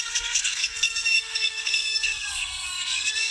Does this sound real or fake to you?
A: fake